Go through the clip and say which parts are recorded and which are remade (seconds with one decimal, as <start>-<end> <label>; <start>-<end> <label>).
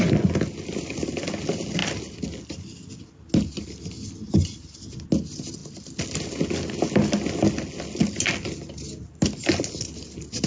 0.0-10.5 recorded